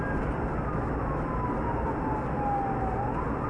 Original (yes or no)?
yes